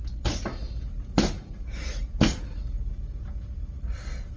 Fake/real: real